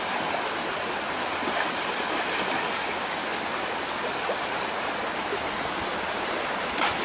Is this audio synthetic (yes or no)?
no